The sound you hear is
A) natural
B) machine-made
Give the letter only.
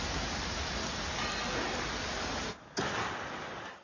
A